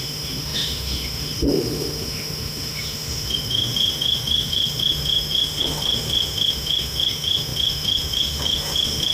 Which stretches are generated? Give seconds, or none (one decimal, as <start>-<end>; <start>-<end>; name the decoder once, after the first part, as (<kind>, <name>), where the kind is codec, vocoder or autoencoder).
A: 0.0-9.1 (autoencoder, DAC-VAE)